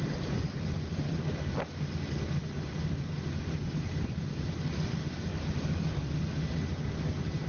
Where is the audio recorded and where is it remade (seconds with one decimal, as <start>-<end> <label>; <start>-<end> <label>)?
0.0-7.5 recorded